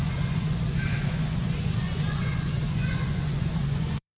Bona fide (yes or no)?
no